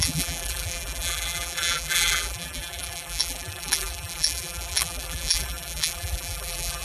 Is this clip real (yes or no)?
no